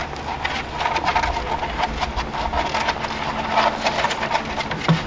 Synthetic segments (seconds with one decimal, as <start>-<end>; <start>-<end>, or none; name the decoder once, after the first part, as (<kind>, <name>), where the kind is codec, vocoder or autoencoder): none